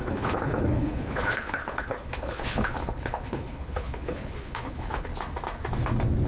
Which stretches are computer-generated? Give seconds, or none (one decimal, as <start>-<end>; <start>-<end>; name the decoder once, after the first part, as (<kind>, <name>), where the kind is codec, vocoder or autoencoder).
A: 0.0-5.1 (codec, HILCodec)